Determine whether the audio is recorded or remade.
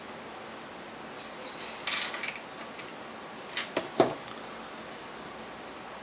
recorded